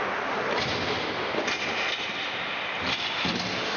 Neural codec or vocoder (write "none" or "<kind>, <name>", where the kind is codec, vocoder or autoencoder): none